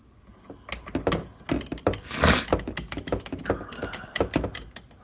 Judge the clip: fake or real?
real